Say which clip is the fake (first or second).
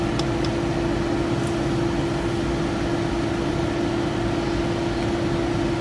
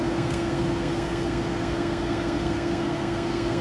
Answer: second